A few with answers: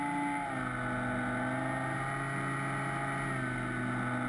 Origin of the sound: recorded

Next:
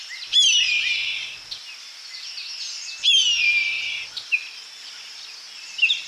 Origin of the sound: recorded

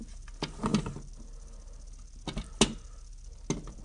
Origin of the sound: recorded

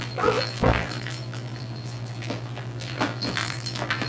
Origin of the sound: remade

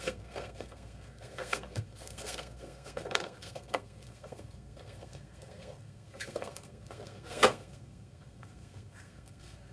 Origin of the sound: remade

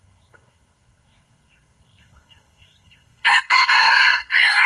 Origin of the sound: remade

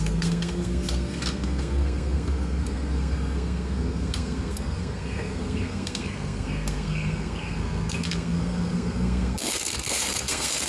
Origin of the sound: remade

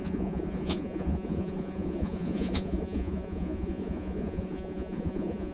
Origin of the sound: remade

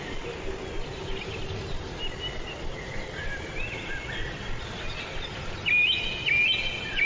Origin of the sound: recorded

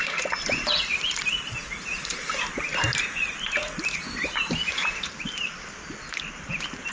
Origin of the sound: recorded